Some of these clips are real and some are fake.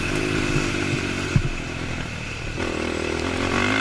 real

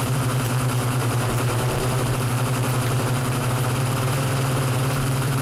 fake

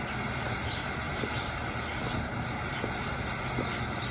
real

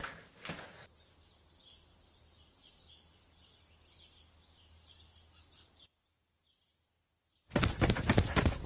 real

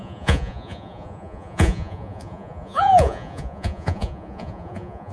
fake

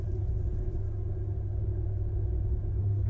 real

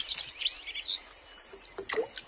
real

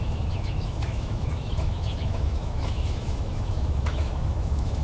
fake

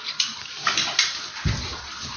real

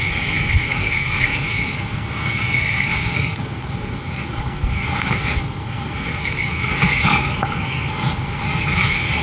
fake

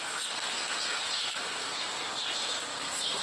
fake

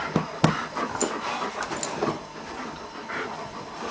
real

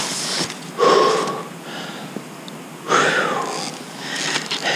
real